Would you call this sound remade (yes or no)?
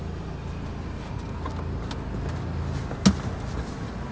no